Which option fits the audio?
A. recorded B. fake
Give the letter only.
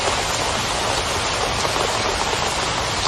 A